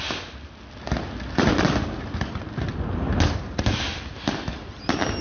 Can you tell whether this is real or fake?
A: real